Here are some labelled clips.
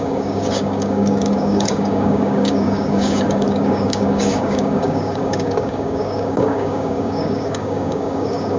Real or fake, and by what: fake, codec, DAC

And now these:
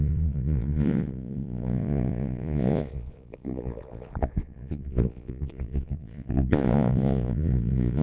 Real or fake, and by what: fake, vocoder, Vocos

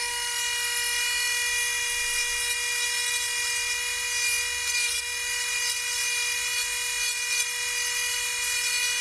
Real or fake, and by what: real